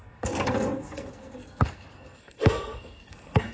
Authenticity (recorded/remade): remade